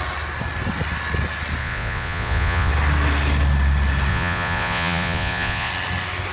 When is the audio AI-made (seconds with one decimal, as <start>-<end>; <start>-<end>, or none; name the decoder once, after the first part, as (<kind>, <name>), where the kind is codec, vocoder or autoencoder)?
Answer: 1.6-2.7 (vocoder, Vocos); 4.1-5.7

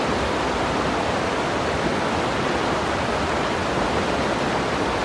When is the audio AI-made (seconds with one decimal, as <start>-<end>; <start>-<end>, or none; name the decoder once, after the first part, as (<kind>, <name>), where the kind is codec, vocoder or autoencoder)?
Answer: none

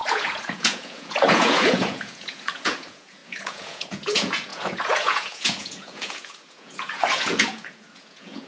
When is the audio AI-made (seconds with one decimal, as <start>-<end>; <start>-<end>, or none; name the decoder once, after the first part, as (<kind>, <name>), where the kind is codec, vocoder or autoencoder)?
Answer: 0.0-8.5 (vocoder, Vocos)

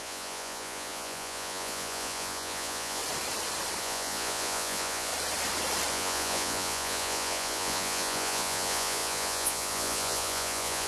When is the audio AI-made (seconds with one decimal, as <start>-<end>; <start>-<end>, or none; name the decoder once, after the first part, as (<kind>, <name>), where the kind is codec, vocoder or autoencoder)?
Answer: 0.0-3.0 (vocoder, Vocos); 3.8-5.1; 5.9-10.9

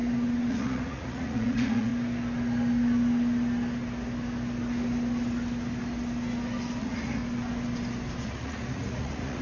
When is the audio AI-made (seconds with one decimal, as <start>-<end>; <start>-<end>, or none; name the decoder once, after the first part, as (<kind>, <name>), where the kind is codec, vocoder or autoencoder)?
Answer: 0.5-1.9 (vocoder, Vocos); 6.8-7.2; 8.2-9.4